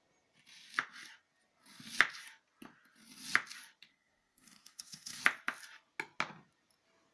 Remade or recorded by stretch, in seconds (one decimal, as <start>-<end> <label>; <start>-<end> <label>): 0.0-3.9 recorded; 3.9-5.2 remade; 5.2-7.1 recorded